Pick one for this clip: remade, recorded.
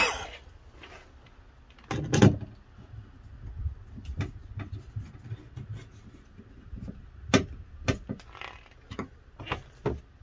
recorded